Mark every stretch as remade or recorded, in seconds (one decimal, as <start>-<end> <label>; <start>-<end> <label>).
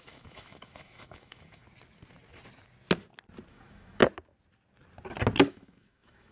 0.0-1.6 remade; 1.6-3.5 recorded; 3.5-4.0 remade; 4.0-5.5 recorded; 5.5-6.3 remade